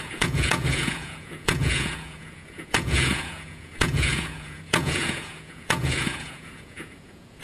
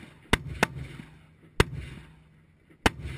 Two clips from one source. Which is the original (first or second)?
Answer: second